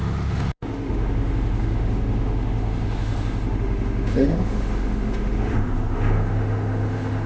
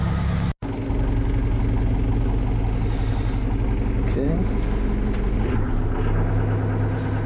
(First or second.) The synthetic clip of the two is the first